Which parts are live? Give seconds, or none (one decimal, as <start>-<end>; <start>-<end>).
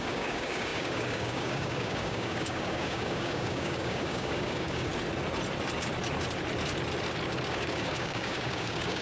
4.9-7.5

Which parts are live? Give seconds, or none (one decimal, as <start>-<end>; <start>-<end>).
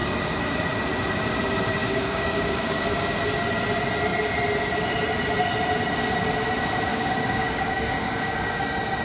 0.0-1.8; 3.0-6.9; 8.6-9.0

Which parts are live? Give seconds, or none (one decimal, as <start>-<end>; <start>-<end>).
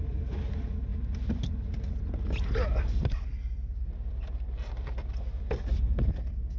0.0-6.6